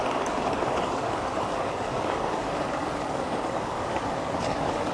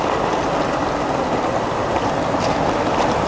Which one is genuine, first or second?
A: second